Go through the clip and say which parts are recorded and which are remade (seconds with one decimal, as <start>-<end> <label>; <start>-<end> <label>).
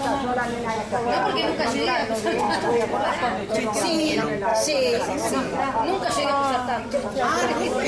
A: 0.0-7.9 recorded